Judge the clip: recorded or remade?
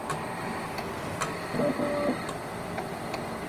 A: recorded